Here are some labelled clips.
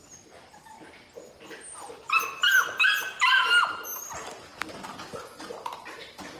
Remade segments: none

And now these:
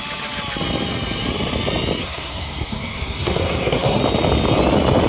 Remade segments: 2.0-4.0 (codec, SNAC)

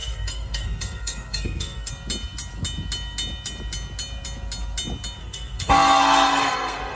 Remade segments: 0.0-1.9 (codec, SNAC); 5.2-7.0

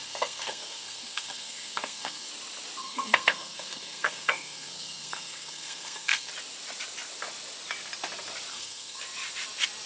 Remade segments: 0.0-2.3 (codec, SNAC); 2.8-6.3; 8.5-9.0

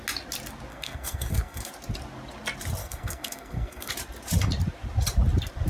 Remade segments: 0.7-1.7 (codec, SNAC); 2.8-3.9

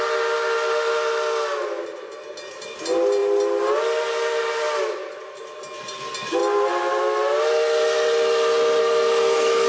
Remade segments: 8.8-9.7 (codec, SNAC)

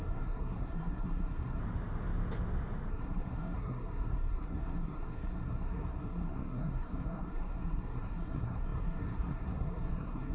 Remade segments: 0.0-1.6 (codec, SNAC); 2.9-10.3